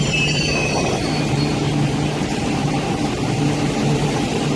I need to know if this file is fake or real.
fake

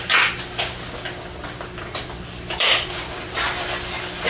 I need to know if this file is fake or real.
real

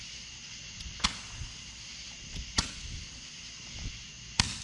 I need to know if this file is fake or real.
real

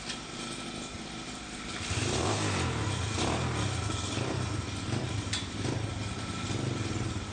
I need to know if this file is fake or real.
real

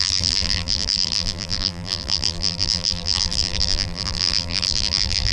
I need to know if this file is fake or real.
fake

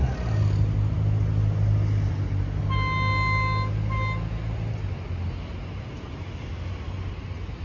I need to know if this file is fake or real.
real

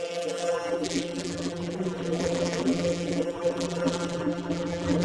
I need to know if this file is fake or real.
fake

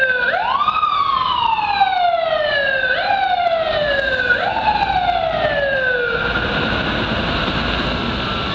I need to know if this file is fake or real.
real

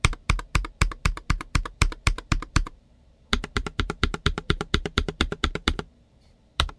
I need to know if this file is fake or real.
fake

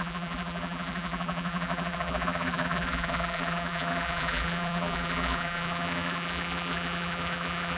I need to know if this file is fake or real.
fake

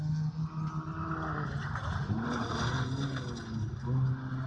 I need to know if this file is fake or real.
real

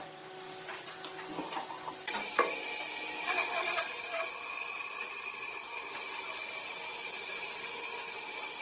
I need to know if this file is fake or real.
real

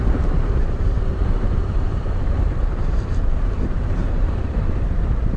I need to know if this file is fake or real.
fake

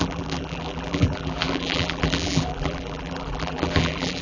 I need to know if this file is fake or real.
fake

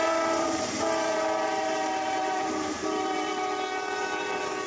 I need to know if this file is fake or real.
fake